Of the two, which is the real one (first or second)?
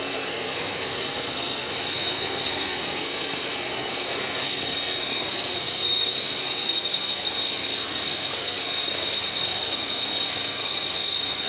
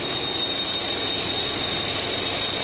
second